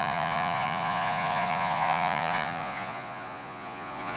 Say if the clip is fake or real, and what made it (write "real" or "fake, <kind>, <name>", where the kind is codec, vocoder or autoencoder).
fake, vocoder, Vocos